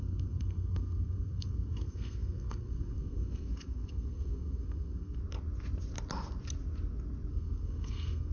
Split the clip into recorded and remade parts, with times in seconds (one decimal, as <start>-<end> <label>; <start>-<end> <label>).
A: 0.0-5.2 remade; 5.2-7.3 recorded; 7.3-8.3 remade